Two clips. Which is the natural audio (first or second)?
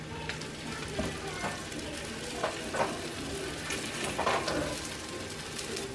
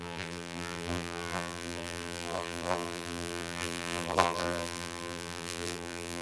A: first